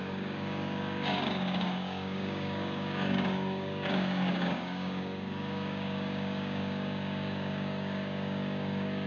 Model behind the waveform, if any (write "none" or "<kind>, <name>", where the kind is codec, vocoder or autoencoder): codec, DAC